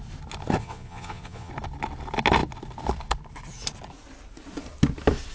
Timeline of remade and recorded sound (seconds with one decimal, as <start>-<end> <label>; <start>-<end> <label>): 0.0-0.6 recorded; 0.6-1.5 remade; 1.5-5.3 recorded